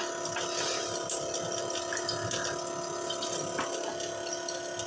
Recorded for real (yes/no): yes